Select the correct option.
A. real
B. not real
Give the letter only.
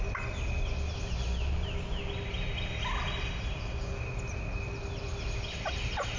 A